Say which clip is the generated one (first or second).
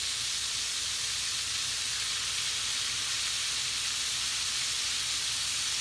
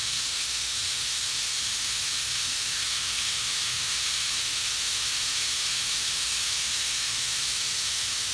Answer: second